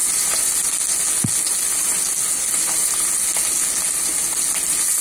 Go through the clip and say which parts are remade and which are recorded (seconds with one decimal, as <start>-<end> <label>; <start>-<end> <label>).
0.0-5.0 recorded